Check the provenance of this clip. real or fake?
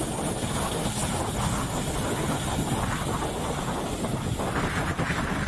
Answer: real